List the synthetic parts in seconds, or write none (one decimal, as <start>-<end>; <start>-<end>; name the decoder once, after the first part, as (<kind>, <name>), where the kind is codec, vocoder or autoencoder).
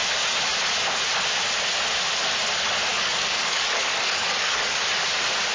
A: 2.9-4.8 (codec, DAC)